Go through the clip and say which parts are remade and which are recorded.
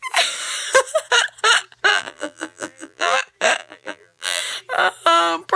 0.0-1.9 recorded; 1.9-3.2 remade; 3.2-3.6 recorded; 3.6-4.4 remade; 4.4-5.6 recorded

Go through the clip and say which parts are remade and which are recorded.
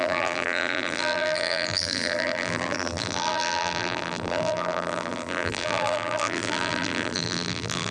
0.0-7.9 remade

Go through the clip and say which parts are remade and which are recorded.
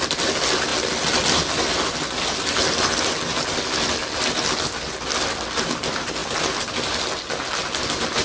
0.0-8.2 recorded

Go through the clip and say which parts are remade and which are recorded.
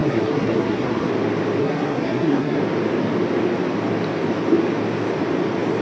0.0-1.1 remade; 1.1-1.6 recorded; 1.6-2.6 remade; 2.6-5.8 recorded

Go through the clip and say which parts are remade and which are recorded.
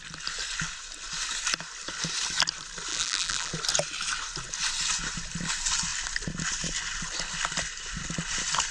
0.0-2.9 recorded; 2.9-3.5 remade; 3.5-8.7 recorded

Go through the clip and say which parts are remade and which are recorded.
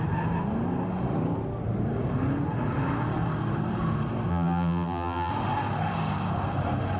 0.0-4.3 recorded; 4.3-5.3 remade; 5.3-7.0 recorded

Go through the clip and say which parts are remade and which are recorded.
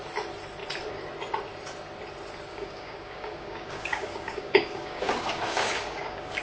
0.0-2.5 recorded; 2.5-6.4 remade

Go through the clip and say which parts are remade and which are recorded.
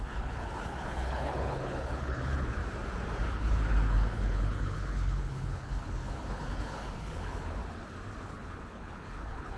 0.0-2.6 remade; 2.6-3.3 recorded; 3.3-7.6 remade; 7.6-8.2 recorded; 8.2-9.6 remade